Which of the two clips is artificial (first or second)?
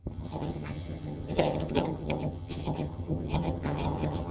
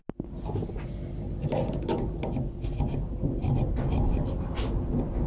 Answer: first